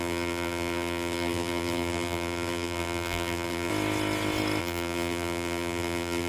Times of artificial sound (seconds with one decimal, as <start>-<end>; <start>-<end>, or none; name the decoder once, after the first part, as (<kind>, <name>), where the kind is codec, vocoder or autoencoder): 0.0-3.7 (vocoder, BigVGAN v2); 4.6-6.3